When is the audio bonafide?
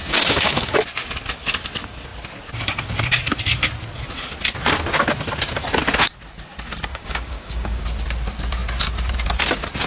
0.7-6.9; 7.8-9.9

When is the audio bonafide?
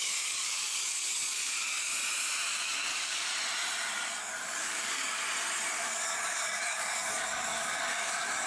1.9-2.5; 3.3-4.2; 5.2-5.7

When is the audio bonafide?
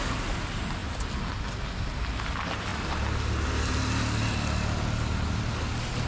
0.0-6.1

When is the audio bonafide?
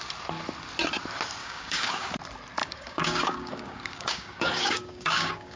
0.0-1.4; 2.1-2.6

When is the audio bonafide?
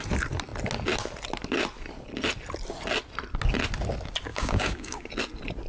0.0-4.3; 5.1-5.7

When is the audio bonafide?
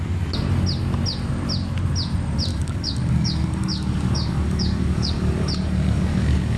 0.0-2.5